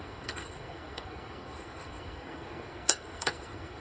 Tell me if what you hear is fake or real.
fake